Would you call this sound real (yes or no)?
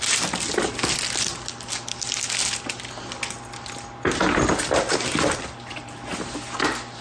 yes